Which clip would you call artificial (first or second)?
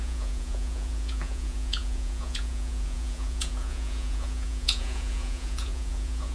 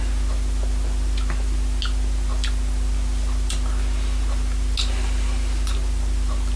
first